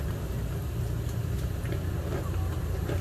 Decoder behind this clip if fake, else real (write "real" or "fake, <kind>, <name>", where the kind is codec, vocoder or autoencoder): real